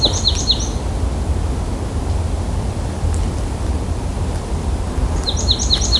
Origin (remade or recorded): recorded